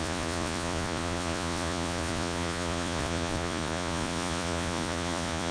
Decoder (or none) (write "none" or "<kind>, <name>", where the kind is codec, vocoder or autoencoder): vocoder, Vocos